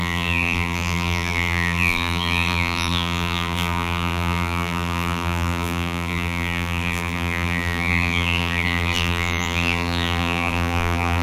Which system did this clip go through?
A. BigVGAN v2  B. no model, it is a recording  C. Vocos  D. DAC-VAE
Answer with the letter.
A